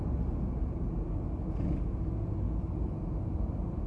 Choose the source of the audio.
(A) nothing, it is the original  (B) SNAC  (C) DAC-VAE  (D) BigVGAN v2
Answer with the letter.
A